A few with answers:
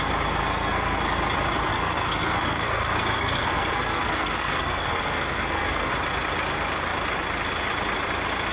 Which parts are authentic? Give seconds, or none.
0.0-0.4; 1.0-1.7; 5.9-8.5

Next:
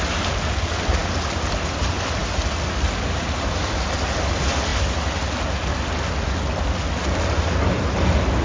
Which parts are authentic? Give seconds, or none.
0.0-8.4

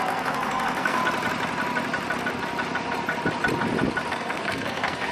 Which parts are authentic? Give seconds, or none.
1.0-4.1

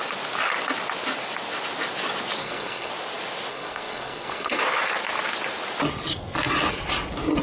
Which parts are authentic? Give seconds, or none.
0.0-2.4; 2.9-3.5; 4.6-7.4

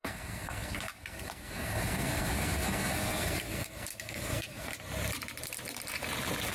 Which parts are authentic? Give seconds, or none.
4.7-6.5

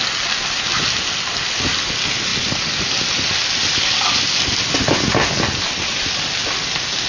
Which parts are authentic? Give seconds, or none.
0.0-7.1

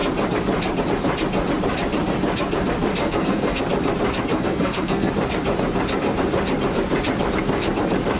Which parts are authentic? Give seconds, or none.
0.0-3.0; 3.6-4.3; 5.1-8.2